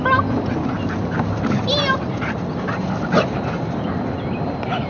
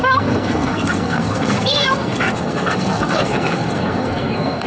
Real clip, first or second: first